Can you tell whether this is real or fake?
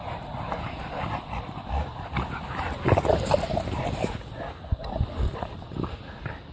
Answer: real